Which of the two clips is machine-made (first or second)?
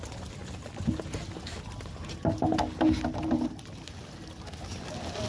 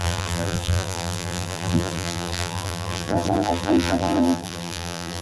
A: second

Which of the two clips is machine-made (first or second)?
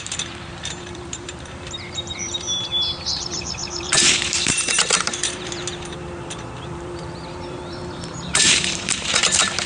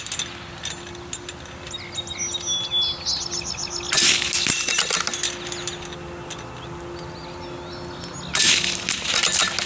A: first